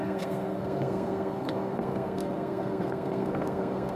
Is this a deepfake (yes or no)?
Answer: yes